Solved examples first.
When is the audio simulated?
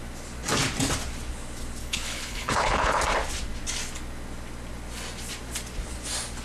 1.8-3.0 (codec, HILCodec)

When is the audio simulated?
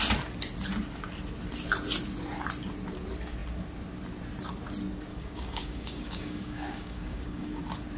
5.1-7.6 (codec, DAC)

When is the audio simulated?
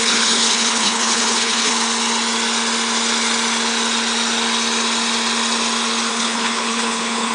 0.0-1.7 (codec, HILCodec); 6.1-7.3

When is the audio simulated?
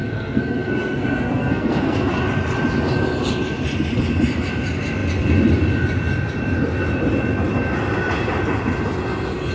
0.0-2.2 (codec, SNAC)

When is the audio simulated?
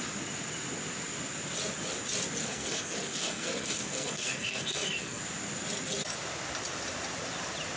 2.4-5.2 (codec, SNAC)